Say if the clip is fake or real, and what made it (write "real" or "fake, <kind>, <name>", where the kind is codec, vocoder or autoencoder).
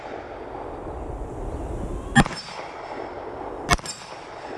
real